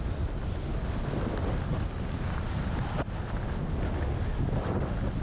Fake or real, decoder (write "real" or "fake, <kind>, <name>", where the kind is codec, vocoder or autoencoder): real